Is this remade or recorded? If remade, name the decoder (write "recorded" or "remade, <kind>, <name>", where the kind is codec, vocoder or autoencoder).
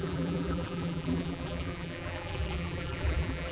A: remade, vocoder, BigVGAN v2